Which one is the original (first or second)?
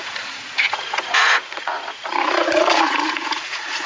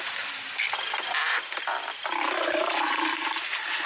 second